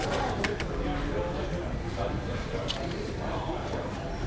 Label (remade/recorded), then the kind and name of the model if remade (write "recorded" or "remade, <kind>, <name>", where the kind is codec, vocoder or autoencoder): remade, vocoder, BigVGAN v2